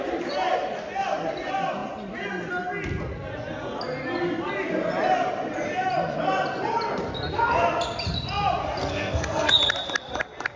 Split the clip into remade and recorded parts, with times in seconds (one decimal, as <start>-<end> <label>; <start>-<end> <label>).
0.0-8.8 recorded; 8.8-9.6 remade; 9.6-10.6 recorded

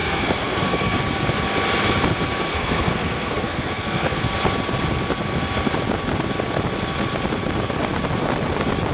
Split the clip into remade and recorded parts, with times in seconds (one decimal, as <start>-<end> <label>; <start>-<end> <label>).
0.0-1.0 remade; 1.0-2.5 recorded; 2.5-4.2 remade; 4.2-8.9 recorded

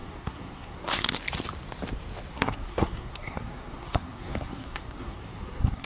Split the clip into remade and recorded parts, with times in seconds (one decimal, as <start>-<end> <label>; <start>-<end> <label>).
0.0-1.2 remade; 1.2-2.3 recorded; 2.3-5.9 remade

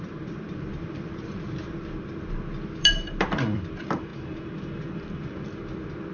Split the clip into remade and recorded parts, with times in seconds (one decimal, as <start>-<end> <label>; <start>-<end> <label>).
0.0-6.1 remade

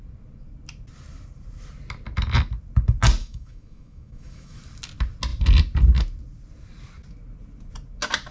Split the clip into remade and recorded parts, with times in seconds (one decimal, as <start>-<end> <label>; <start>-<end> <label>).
0.0-3.2 recorded; 3.2-4.6 remade; 4.6-8.3 recorded

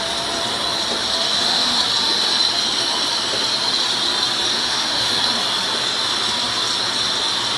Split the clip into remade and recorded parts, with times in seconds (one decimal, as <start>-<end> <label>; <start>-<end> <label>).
0.0-1.3 recorded; 1.3-1.8 remade; 1.8-4.5 recorded; 4.5-5.2 remade; 5.2-7.6 recorded

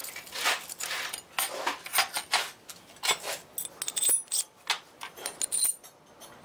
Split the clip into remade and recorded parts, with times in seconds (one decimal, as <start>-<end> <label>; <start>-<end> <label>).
0.0-6.4 recorded